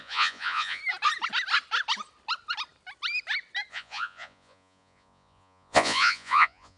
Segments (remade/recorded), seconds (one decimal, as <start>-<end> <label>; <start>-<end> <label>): 0.0-0.8 remade; 0.8-3.7 recorded; 3.7-6.8 remade